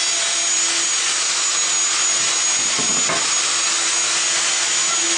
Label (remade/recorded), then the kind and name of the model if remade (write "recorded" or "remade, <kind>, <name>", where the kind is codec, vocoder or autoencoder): recorded